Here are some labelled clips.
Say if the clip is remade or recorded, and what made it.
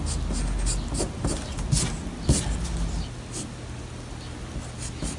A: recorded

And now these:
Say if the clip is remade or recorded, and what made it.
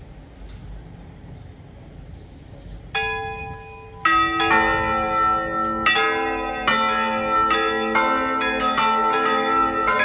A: recorded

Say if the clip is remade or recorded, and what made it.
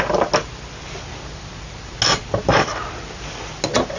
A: recorded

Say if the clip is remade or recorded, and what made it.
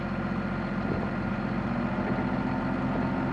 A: recorded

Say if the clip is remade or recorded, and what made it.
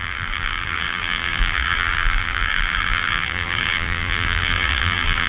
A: remade, vocoder, BigVGAN v2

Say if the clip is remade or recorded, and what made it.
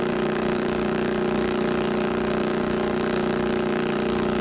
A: remade, codec, DAC